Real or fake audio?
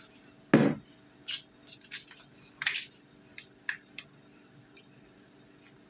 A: real